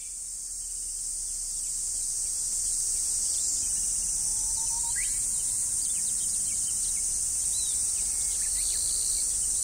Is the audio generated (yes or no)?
no